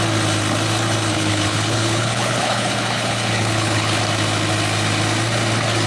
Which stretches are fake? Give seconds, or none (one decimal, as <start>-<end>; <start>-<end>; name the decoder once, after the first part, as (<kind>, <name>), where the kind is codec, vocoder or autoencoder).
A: 1.1-4.0 (codec, HILCodec)